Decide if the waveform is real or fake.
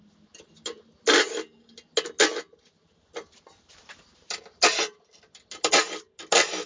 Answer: real